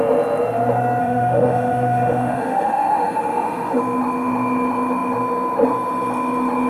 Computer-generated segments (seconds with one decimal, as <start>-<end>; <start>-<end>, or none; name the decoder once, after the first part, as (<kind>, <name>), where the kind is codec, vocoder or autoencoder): 1.0-3.8 (autoencoder, DAC-VAE)